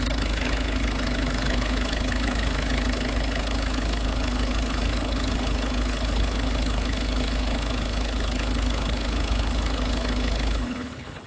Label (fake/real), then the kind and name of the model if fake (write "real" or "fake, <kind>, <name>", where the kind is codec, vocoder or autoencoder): fake, codec, HILCodec